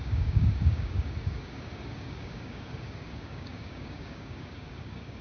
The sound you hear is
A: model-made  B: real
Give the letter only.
A